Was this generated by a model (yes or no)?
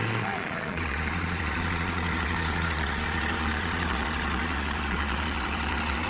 yes